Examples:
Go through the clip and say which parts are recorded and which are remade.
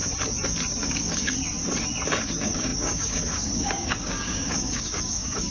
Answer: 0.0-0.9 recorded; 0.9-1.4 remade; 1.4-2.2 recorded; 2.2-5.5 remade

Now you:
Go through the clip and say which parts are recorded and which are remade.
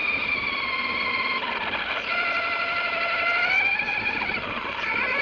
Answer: 0.0-5.2 recorded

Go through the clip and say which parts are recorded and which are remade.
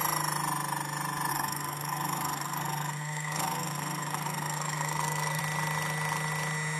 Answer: 0.0-1.3 recorded; 1.3-5.4 remade; 5.4-6.8 recorded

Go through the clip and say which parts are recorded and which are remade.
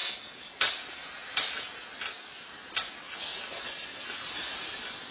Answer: 0.0-5.1 recorded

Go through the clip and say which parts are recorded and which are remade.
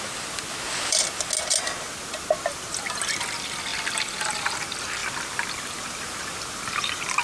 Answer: 0.0-7.2 recorded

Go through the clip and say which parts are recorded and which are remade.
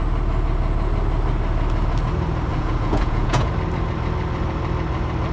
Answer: 0.0-2.5 recorded; 2.5-3.5 remade; 3.5-5.3 recorded